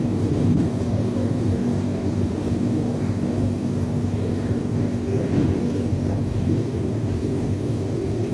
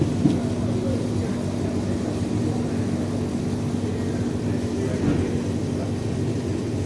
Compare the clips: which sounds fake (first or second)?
first